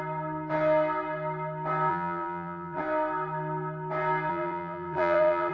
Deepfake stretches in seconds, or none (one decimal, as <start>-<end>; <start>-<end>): 1.9-2.8; 4.3-5.5

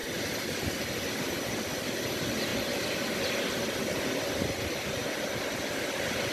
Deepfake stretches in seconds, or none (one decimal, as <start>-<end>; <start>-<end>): none

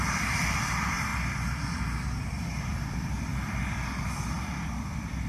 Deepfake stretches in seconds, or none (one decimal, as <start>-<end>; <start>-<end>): 0.0-1.1; 2.2-5.3

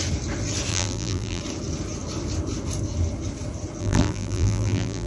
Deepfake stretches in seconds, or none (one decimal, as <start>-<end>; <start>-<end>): 0.7-1.4; 3.8-5.1

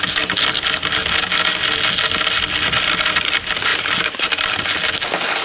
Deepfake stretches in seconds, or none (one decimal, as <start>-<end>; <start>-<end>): 3.7-4.5

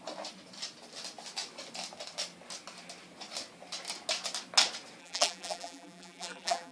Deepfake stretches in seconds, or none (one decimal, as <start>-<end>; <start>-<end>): 5.0-6.7